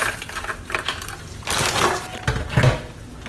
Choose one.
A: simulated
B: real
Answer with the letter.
B